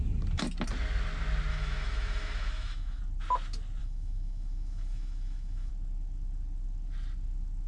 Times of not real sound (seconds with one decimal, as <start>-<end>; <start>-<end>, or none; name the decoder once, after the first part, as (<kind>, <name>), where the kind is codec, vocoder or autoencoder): 1.5-3.0 (autoencoder, DAC-VAE); 3.8-5.7